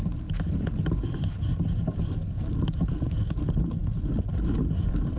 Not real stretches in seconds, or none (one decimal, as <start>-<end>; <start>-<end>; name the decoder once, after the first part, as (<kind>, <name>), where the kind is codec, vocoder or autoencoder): none